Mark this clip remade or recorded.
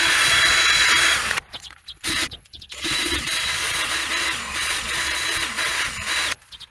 remade